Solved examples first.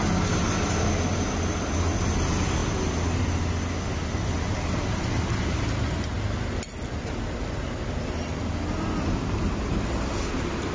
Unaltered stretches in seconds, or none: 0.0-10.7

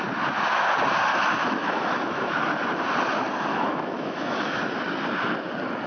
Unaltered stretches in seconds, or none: 0.0-1.1; 2.3-3.5; 4.6-5.9

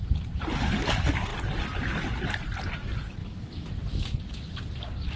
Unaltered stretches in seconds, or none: 0.0-3.2; 3.7-5.2

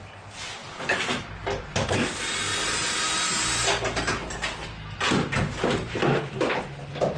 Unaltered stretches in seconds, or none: 0.0-7.2

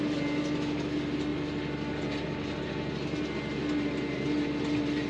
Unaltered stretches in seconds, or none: 0.0-5.1

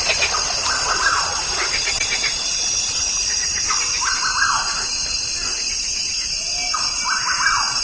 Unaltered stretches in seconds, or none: 0.0-7.8